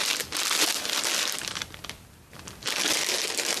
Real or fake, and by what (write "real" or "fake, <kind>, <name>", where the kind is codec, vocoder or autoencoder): real